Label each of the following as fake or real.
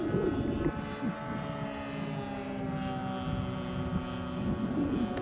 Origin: real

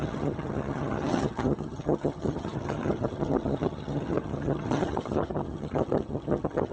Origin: fake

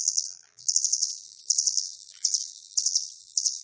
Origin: fake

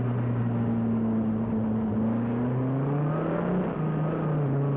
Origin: real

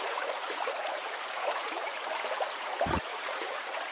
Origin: fake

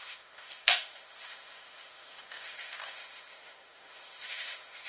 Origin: fake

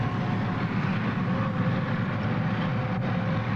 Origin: real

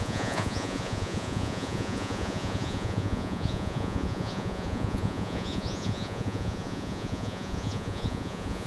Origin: fake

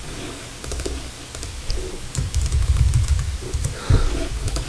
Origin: fake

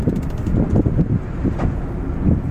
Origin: real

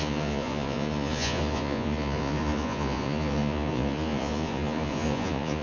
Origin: fake